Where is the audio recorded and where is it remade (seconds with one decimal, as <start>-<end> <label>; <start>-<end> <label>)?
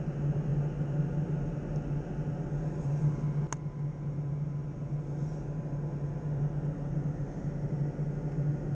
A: 0.0-8.7 recorded